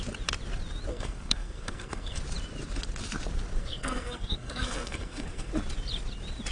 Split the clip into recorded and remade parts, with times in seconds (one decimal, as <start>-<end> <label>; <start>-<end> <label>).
0.0-0.9 recorded; 0.9-2.2 remade; 2.2-3.6 recorded; 3.6-5.5 remade; 5.5-6.5 recorded